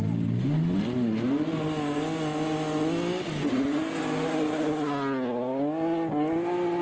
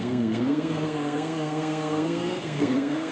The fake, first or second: second